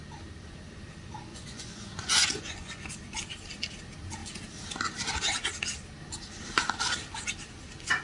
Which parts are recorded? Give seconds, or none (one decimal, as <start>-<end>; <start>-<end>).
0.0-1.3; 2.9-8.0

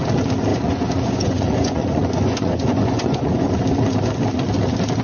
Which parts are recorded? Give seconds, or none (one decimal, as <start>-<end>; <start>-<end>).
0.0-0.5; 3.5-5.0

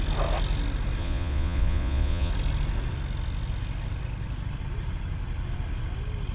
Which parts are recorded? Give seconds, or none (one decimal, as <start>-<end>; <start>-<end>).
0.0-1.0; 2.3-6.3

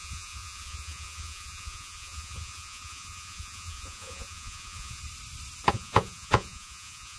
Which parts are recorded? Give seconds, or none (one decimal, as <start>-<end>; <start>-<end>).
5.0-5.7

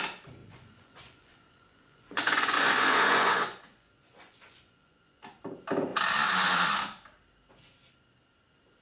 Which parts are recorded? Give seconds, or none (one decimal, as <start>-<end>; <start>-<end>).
0.0-0.4; 5.2-8.8